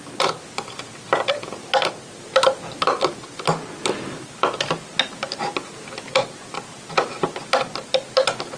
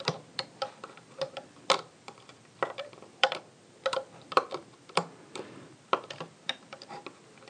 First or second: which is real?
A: first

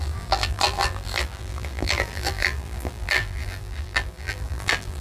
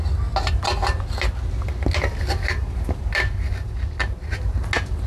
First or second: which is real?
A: second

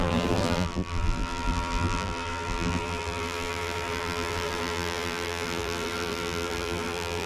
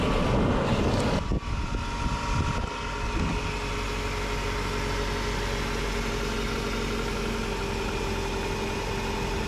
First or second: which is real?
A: second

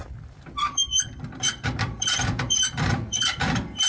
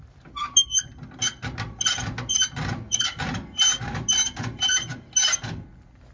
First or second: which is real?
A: second